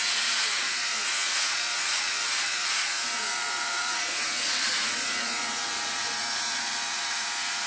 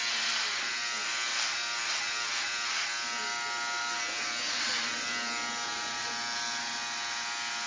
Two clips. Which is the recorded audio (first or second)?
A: second